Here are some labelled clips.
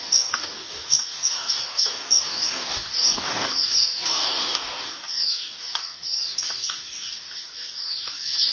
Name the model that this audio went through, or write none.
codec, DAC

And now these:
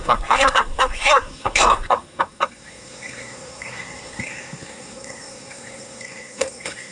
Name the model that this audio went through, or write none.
codec, SNAC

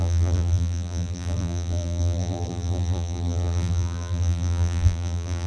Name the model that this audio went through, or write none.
vocoder, BigVGAN v2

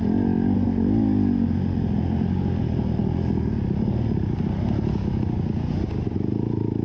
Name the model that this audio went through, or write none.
none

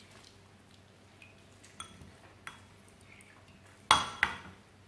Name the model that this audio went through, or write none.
none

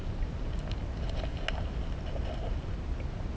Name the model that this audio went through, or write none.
none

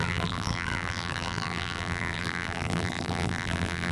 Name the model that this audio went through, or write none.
vocoder, BigVGAN v2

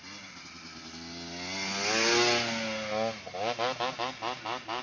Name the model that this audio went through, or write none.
none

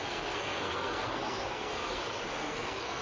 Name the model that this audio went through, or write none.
codec, SNAC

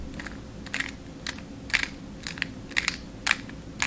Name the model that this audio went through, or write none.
none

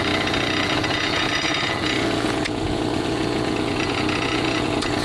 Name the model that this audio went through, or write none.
vocoder, Vocos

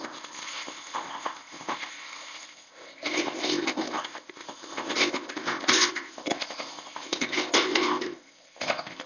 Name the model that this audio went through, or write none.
codec, ZipCodec